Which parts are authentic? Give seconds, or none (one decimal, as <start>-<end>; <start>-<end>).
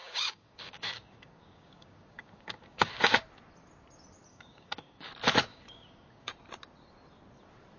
3.2-4.3; 5.1-5.5; 6.3-7.8